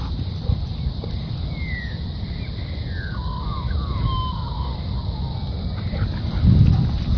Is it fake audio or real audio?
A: real